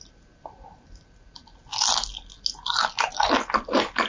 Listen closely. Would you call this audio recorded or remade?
recorded